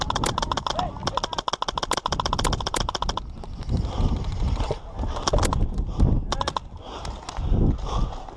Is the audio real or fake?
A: real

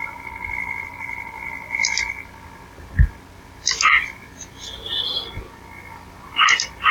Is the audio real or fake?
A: real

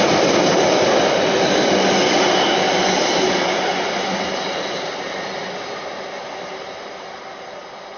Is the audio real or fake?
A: real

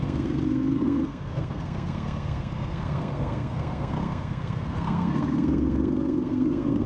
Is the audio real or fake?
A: fake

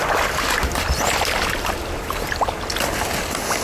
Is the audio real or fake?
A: real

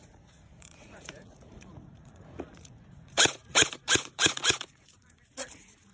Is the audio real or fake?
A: fake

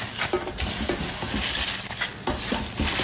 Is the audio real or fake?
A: real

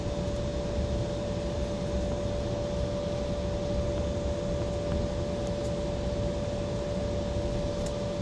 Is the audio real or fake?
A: real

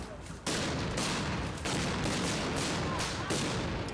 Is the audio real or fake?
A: real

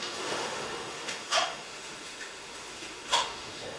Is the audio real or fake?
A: fake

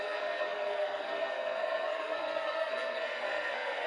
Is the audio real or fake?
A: fake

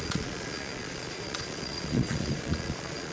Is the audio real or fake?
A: fake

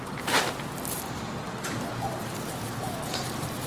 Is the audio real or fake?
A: fake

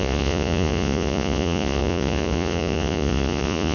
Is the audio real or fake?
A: fake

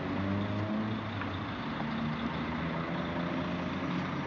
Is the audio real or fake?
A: real